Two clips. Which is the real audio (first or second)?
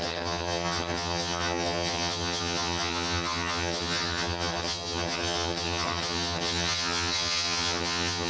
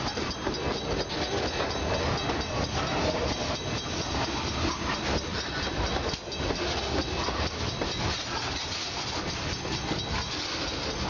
second